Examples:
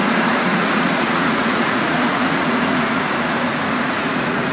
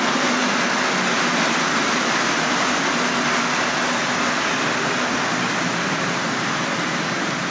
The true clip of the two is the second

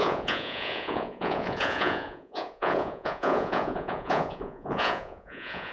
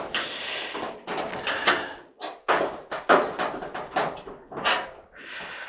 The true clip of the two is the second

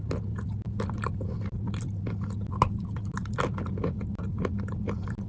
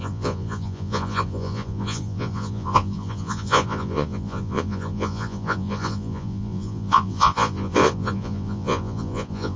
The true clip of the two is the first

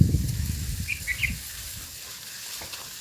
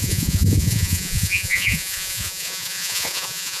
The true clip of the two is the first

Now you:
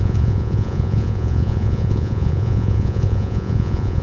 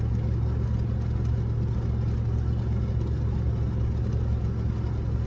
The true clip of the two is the second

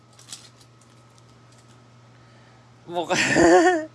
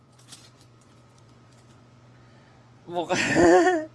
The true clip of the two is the first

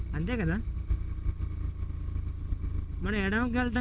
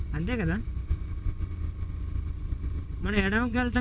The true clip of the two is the first